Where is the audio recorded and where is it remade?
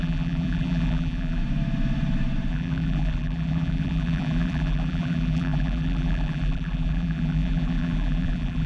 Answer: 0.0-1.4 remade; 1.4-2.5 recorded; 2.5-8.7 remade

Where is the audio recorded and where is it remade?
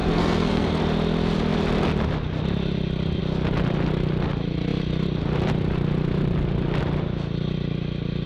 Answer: 0.0-0.8 remade; 0.8-8.3 recorded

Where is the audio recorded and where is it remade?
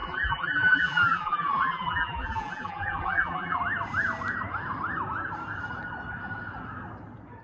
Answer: 0.0-3.6 remade; 3.6-7.4 recorded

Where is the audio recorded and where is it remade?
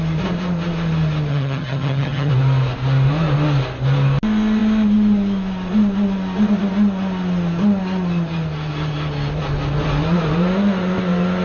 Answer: 0.0-1.3 recorded; 1.3-2.3 remade; 2.3-11.4 recorded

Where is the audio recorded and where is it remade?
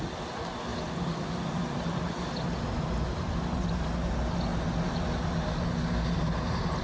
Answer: 0.0-6.8 recorded